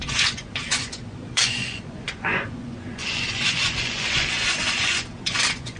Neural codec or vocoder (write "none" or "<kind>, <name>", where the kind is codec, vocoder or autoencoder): vocoder, Vocos